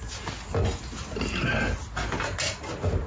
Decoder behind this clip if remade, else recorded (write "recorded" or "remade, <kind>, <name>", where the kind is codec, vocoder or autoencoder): recorded